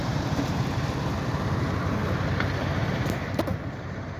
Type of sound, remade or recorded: recorded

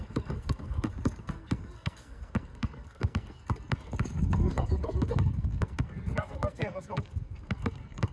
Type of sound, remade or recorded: remade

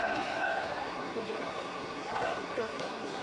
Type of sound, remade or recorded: remade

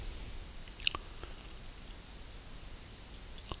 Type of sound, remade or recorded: recorded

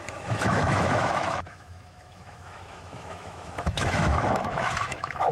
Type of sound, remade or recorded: remade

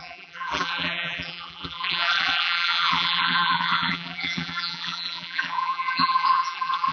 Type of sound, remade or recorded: remade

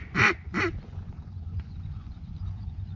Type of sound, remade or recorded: remade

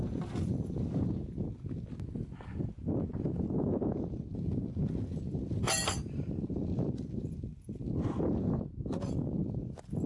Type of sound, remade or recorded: recorded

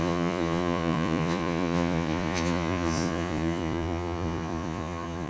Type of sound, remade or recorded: remade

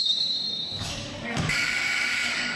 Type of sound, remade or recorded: remade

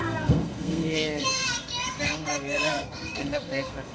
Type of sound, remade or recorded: remade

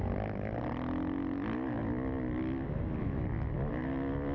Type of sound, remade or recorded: recorded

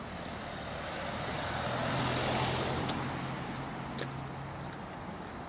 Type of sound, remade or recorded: recorded